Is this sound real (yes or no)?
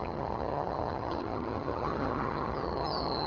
no